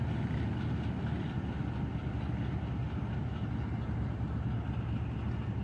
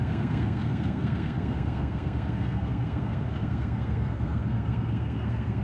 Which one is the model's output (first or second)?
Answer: second